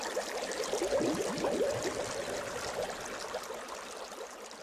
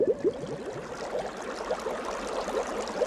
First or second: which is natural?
second